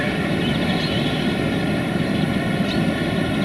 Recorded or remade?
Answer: recorded